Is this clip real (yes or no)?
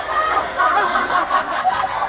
no